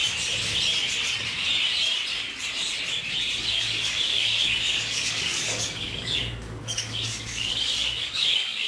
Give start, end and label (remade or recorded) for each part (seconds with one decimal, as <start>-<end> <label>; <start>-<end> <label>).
0.0-3.5 recorded; 3.5-8.7 remade